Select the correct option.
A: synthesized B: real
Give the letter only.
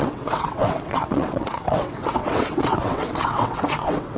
A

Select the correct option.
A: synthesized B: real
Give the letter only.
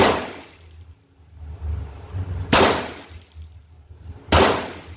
B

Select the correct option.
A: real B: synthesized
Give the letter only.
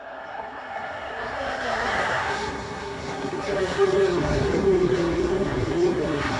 B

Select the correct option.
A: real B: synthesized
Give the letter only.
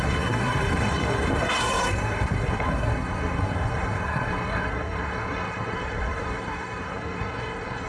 B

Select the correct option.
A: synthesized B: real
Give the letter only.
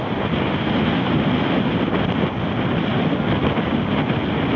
B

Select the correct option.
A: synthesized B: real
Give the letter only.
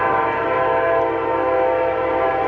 B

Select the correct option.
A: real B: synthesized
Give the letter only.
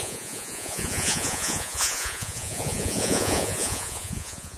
B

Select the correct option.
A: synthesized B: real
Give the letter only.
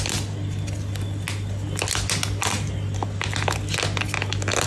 B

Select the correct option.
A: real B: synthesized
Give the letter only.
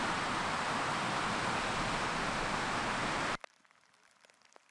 A